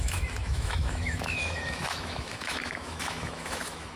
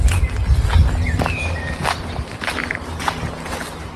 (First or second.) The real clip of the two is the second